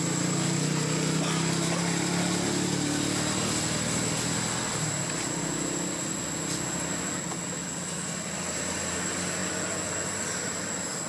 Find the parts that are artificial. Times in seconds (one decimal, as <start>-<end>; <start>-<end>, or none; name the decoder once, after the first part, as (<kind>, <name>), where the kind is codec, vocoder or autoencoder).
none